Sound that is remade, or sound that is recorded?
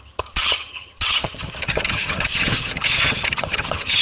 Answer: remade